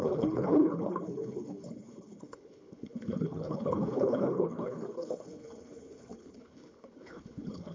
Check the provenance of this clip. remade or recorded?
remade